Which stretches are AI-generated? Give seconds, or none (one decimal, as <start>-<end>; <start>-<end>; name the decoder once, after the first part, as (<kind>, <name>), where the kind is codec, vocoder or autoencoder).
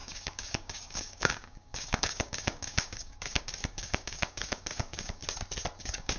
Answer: 0.0-5.2 (codec, DAC); 5.8-6.2